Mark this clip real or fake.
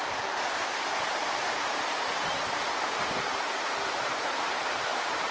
fake